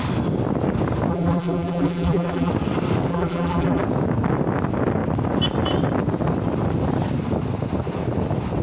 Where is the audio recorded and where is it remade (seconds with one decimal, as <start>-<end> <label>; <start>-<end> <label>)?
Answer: 0.0-1.1 recorded; 1.1-2.5 remade; 2.5-3.1 recorded; 3.1-3.8 remade; 3.8-8.6 recorded